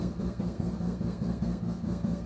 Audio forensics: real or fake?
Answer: fake